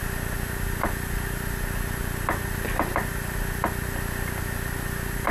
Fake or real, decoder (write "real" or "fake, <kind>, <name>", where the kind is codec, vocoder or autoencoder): real